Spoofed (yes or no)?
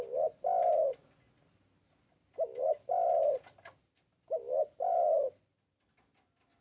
no